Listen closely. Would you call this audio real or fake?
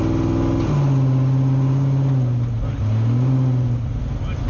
real